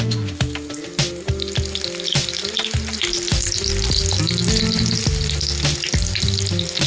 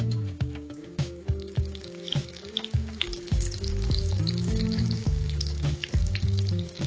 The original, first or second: first